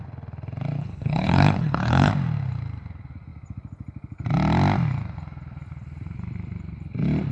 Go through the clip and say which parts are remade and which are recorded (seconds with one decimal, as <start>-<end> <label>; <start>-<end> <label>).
0.0-0.8 recorded; 0.8-2.1 remade; 2.1-7.3 recorded